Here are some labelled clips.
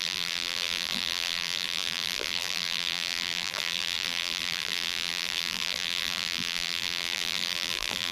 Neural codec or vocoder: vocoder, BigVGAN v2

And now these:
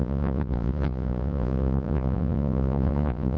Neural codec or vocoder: vocoder, Vocos